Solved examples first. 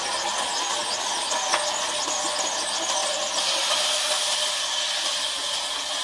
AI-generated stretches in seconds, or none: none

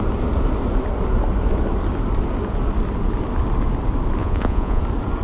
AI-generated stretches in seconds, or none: 4.2-4.8 (vocoder, Vocos)

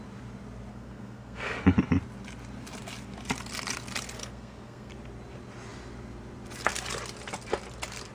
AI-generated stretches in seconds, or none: 0.7-1.6 (codec, SNAC); 4.2-4.9